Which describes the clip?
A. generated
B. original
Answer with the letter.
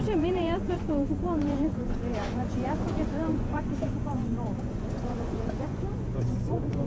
A